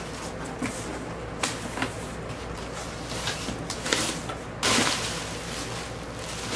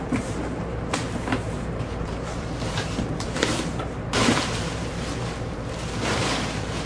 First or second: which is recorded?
first